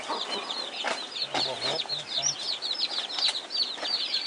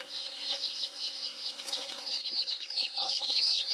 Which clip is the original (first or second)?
first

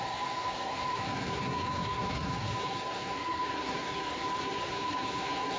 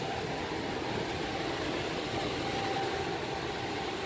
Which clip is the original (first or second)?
second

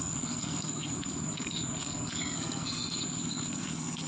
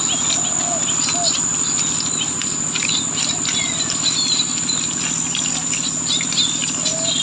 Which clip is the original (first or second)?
second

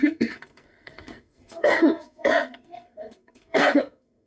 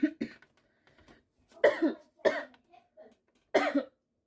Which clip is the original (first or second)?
second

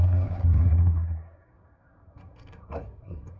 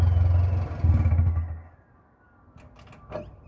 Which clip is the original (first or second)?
second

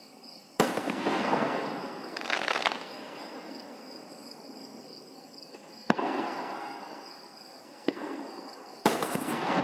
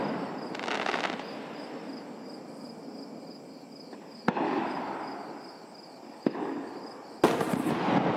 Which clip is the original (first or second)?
second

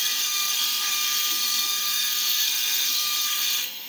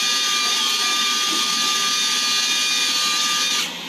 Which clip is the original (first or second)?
second